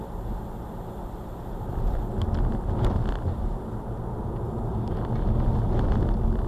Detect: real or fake real